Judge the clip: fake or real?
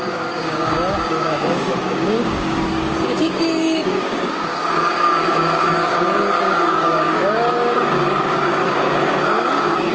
fake